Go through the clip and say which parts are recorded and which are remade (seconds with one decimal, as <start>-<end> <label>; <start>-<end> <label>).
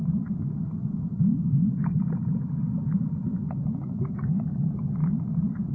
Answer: 0.0-5.7 recorded